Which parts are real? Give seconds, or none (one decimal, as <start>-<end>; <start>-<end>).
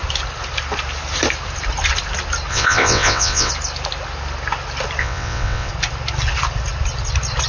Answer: 0.0-2.5; 3.5-5.0; 5.7-7.5